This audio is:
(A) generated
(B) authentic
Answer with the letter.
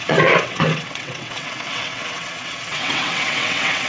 A